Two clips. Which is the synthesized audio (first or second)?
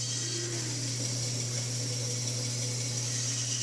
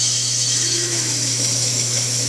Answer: second